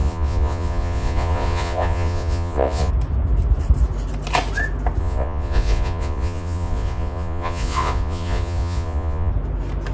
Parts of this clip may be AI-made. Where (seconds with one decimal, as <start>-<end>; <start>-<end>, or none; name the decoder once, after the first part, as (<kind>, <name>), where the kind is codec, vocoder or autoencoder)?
0.0-2.9 (vocoder, Vocos); 5.0-9.3